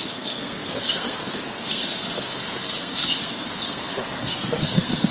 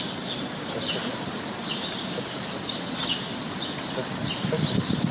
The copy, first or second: first